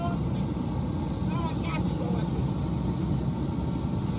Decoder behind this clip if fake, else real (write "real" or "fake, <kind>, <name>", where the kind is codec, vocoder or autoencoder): real